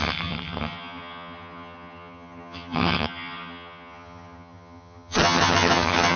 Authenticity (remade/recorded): remade